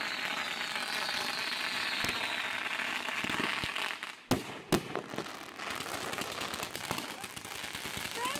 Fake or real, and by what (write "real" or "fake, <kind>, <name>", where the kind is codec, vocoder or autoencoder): real